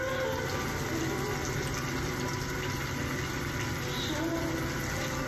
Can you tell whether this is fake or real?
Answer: real